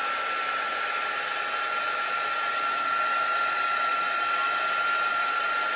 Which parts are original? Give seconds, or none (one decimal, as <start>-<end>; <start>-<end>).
0.0-3.5; 4.4-5.1